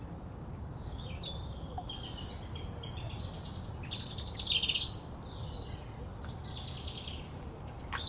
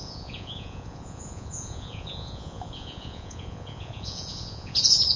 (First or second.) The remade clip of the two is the second